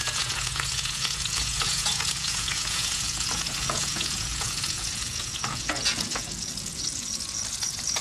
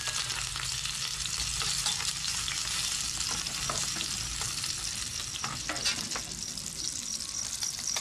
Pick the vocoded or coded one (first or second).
first